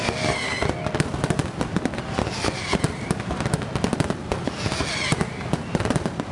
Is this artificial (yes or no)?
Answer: no